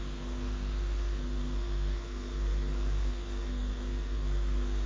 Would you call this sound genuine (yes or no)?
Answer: no